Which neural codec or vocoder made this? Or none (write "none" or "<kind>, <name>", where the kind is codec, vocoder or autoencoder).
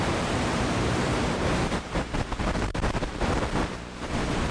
vocoder, BigVGAN v2